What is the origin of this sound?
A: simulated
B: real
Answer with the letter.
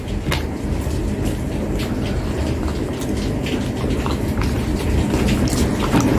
B